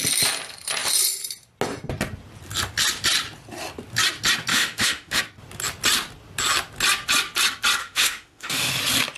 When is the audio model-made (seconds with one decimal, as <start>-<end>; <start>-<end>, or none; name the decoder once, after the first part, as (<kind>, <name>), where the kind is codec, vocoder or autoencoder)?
4.5-5.2 (autoencoder, DAC-VAE); 7.8-8.7

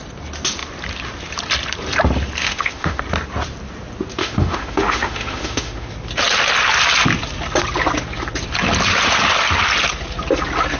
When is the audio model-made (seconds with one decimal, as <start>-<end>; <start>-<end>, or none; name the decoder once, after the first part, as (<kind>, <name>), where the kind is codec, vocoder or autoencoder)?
2.4-3.0 (autoencoder, DAC-VAE); 4.2-5.9

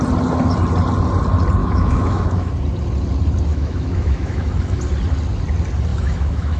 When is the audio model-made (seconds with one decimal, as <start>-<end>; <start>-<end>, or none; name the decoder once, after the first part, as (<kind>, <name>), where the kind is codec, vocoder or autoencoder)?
1.6-2.5 (autoencoder, DAC-VAE); 3.5-4.8; 5.9-6.6

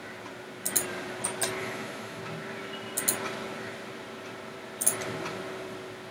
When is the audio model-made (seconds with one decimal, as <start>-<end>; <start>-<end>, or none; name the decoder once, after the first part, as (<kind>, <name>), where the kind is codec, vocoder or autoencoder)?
1.6-2.2 (autoencoder, DAC-VAE)

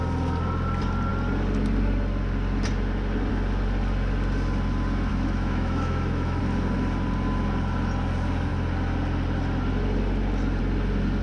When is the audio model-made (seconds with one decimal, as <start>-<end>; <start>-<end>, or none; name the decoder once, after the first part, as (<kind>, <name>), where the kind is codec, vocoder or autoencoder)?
5.1-6.4 (autoencoder, DAC-VAE)